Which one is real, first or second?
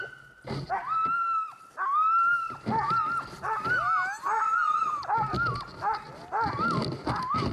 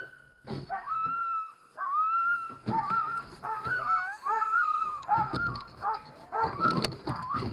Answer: first